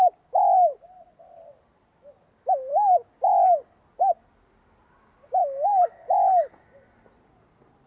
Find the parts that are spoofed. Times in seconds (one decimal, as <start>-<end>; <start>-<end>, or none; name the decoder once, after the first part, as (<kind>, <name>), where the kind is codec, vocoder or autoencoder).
none